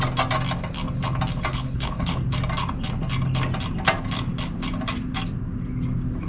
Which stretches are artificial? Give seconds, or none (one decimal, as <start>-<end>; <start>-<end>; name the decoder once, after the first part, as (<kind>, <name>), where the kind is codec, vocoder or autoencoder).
1.5-2.2 (codec, HILCodec)